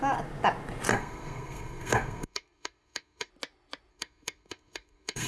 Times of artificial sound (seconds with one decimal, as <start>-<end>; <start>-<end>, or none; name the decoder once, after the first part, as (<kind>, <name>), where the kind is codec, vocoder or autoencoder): 0.9-3.3 (codec, SNAC); 3.9-5.3